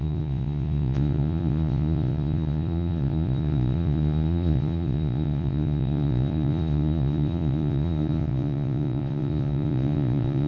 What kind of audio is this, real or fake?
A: fake